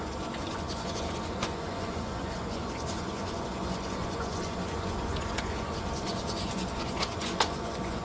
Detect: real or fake fake